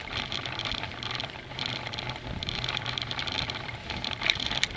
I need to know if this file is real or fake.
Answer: fake